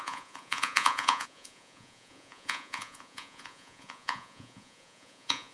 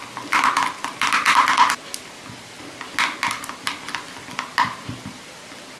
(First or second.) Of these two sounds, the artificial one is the first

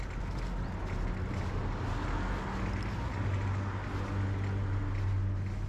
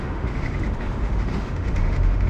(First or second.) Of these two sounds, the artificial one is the second